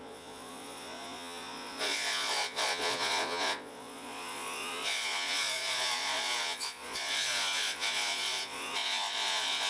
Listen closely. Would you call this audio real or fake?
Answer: fake